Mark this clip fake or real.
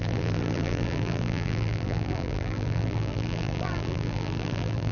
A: fake